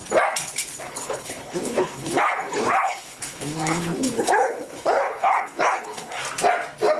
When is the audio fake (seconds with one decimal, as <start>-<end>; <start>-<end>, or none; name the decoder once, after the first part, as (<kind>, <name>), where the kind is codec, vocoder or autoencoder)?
0.8-6.2 (codec, HILCodec)